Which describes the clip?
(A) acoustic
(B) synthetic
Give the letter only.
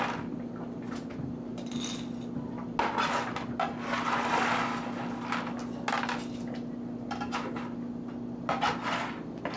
A